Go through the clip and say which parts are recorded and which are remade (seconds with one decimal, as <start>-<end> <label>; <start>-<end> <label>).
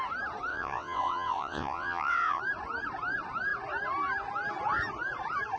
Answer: 0.0-0.5 recorded; 0.5-2.4 remade; 2.4-5.6 recorded